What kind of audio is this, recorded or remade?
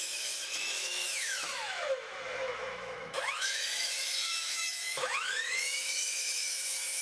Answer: remade